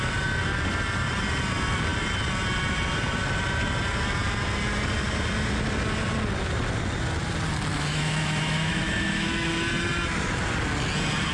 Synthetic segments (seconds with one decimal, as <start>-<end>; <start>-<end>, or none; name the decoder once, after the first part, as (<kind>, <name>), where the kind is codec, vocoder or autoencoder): 7.7-9.5 (autoencoder, DAC-VAE)